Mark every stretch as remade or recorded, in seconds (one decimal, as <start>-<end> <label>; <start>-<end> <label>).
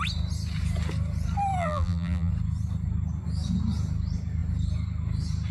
0.0-1.6 recorded; 1.6-2.3 remade; 2.3-5.5 recorded